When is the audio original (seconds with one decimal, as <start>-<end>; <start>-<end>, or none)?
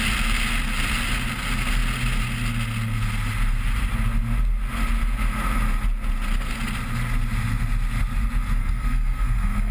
0.0-8.6